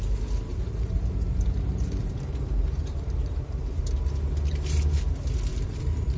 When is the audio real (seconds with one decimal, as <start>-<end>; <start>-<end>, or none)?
0.0-0.5; 3.8-5.5